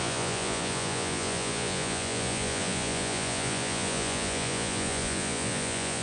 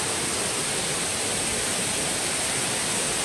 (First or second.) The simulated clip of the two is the first